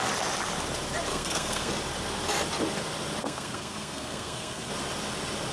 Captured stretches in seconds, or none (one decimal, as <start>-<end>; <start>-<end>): 0.0-1.1; 1.7-3.2; 4.7-5.5